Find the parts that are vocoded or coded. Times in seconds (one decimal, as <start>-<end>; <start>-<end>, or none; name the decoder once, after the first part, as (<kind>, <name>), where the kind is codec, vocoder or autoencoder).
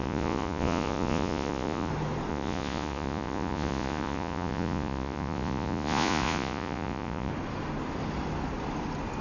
0.0-1.9 (vocoder, Vocos); 2.3-7.3